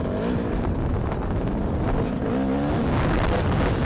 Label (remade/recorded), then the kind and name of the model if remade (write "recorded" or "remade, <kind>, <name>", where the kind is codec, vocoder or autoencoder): recorded